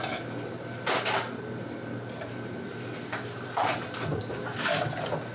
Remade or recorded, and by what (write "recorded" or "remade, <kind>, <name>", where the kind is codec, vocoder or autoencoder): recorded